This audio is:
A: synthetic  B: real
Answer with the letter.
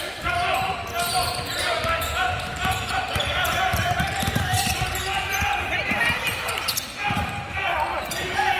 A